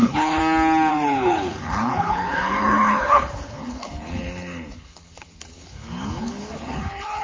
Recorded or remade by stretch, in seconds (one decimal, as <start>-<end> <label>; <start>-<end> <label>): 0.0-0.4 remade; 0.4-0.9 recorded; 0.9-7.2 remade